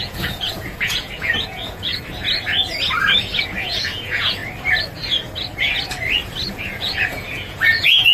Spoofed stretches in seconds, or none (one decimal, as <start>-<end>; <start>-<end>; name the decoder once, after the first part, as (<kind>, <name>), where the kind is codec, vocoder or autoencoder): 0.0-1.9 (vocoder, Vocos); 3.2-4.4; 6.5-8.1